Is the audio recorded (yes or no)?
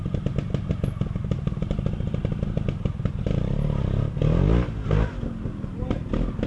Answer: yes